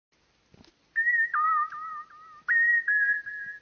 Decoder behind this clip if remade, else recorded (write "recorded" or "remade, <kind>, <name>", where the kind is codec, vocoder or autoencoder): recorded